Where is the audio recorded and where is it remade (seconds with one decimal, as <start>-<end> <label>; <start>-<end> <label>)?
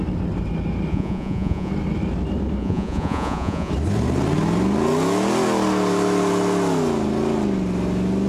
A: 0.0-0.9 recorded; 0.9-1.7 remade; 1.7-2.6 recorded; 2.6-3.7 remade; 3.7-8.3 recorded